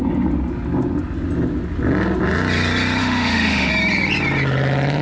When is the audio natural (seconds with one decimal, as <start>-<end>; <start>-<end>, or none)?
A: 0.0-3.0; 3.7-5.0